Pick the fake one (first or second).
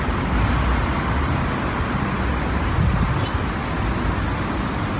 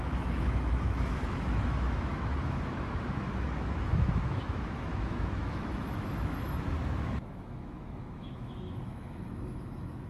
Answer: second